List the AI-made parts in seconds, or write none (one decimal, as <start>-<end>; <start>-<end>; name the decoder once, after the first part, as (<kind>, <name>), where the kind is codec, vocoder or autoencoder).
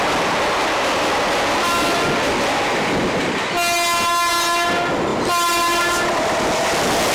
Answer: none